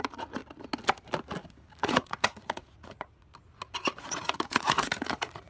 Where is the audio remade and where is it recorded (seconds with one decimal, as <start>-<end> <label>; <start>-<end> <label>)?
0.0-0.4 remade; 0.4-1.8 recorded; 1.8-3.3 remade; 3.3-4.0 recorded; 4.0-5.5 remade